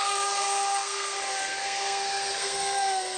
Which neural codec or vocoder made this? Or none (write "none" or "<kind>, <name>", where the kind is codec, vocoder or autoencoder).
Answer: codec, SNAC